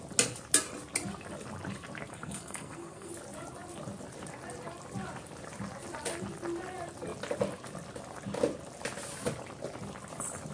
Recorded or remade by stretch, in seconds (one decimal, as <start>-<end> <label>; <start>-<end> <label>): 0.0-2.1 recorded; 2.1-3.1 remade; 3.1-10.5 recorded